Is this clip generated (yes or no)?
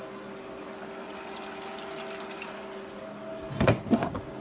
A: no